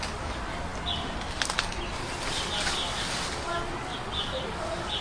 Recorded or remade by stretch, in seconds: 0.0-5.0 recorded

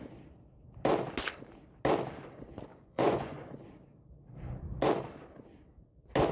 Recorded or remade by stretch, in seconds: 0.0-2.7 recorded; 2.7-3.5 remade; 3.5-6.3 recorded